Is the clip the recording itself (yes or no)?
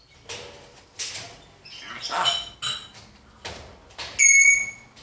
yes